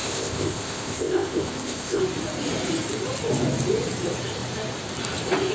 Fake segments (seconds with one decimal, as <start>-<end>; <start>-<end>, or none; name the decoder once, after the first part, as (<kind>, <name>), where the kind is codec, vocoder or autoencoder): 0.0-2.0 (codec, ZipCodec)